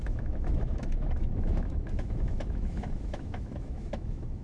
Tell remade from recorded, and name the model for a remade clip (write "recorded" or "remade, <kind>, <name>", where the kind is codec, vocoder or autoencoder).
remade, autoencoder, DAC-VAE